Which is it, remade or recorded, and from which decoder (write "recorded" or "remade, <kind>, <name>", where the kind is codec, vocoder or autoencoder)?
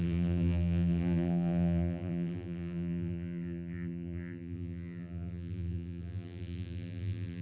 remade, vocoder, BigVGAN v2